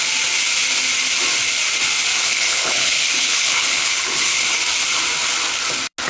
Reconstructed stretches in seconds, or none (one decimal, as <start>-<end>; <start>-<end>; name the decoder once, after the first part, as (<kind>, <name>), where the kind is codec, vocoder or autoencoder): 2.2-4.4 (codec, HILCodec)